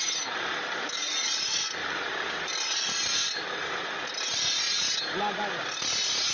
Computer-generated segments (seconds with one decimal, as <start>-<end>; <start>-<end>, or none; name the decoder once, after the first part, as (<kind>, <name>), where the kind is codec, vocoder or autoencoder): none